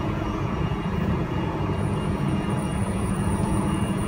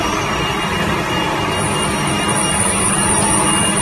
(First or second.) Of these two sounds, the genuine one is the second